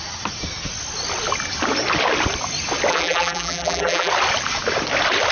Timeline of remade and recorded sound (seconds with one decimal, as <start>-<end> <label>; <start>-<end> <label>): 0.0-2.9 recorded; 2.9-4.1 remade; 4.1-5.3 recorded